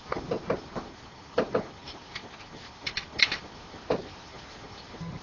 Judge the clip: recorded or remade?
recorded